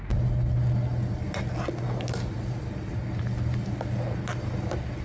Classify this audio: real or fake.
real